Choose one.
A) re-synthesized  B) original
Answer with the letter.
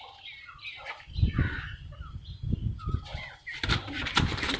B